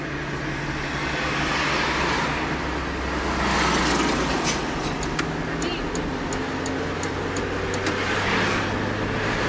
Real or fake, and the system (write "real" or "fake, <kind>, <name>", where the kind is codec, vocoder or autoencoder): real